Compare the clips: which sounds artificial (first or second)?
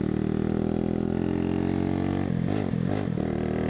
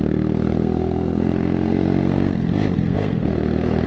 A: second